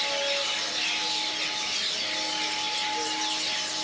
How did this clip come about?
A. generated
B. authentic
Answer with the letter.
B